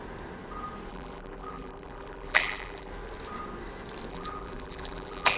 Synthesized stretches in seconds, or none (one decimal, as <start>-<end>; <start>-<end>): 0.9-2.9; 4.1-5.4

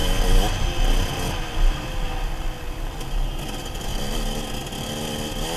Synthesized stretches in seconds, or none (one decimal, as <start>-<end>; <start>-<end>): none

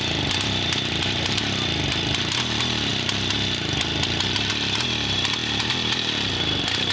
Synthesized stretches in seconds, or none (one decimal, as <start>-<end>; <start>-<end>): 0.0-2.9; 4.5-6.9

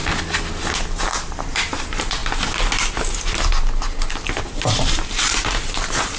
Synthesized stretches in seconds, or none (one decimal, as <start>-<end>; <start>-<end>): 1.1-2.2; 4.4-6.2